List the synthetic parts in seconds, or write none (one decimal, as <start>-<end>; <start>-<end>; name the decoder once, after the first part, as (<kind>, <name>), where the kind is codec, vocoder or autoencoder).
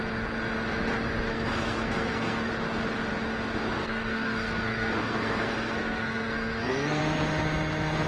1.3-2.5 (codec, SNAC); 3.8-7.0